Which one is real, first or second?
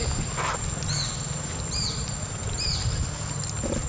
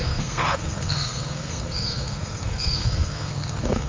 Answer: first